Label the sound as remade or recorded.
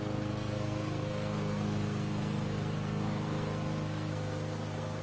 remade